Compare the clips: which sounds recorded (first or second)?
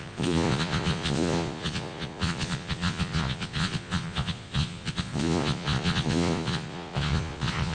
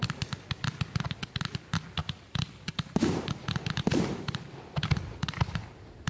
second